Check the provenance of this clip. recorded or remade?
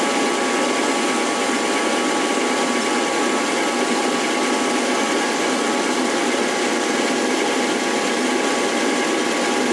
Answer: recorded